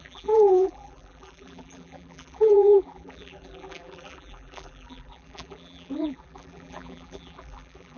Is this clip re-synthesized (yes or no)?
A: yes